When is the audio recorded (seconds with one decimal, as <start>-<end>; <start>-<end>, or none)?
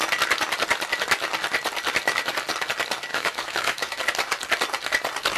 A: 0.0-3.1; 4.0-5.4